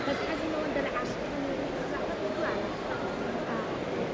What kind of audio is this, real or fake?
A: real